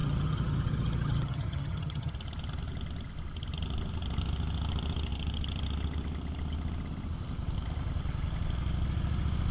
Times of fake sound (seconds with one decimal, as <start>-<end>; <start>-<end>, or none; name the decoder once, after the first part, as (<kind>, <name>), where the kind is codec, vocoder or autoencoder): 0.0-2.1 (vocoder, HiFi-GAN)